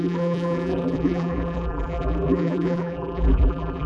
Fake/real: fake